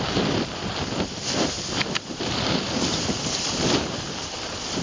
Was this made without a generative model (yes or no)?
no